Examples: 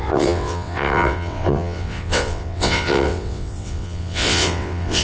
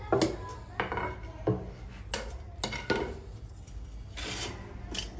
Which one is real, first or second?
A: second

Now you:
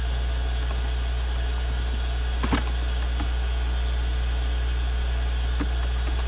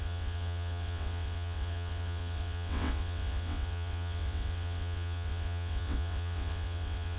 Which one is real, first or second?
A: first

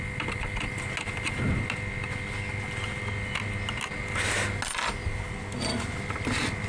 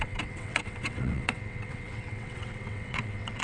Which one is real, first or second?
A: first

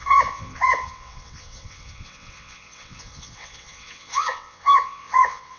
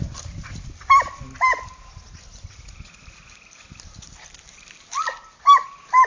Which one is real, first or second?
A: second